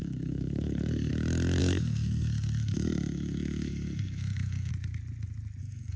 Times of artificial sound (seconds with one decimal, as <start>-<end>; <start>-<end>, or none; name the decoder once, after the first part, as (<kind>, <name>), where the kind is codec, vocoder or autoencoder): 0.0-1.1 (codec, SNAC); 1.6-4.7; 5.6-6.0